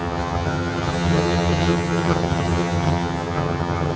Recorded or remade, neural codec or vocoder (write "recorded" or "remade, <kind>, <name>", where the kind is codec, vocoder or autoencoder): remade, vocoder, HiFi-GAN